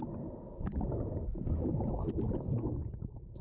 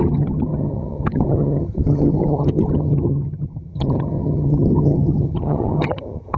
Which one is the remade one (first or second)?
second